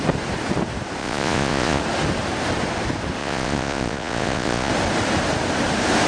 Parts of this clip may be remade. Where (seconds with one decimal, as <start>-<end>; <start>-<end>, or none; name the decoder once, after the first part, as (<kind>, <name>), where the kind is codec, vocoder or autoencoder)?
1.0-1.8 (vocoder, Vocos); 3.2-4.7